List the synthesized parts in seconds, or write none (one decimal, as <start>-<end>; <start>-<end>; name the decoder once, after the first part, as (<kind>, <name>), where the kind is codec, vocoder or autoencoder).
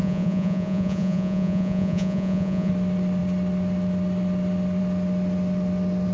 0.0-2.7 (vocoder, Vocos)